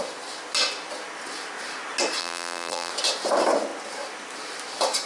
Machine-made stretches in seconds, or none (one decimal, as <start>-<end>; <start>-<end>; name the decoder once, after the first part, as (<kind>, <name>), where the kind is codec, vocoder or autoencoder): 2.2-2.9 (vocoder, BigVGAN v2)